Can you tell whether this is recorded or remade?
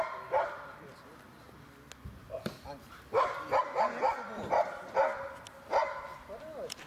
recorded